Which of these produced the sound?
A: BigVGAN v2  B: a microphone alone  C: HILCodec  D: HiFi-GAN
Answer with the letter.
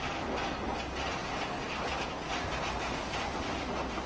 B